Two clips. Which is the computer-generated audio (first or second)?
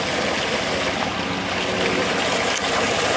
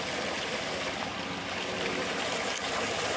second